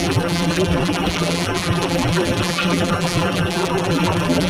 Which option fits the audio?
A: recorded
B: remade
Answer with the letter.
B